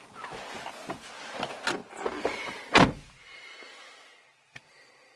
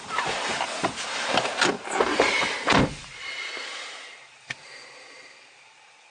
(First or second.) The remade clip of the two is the second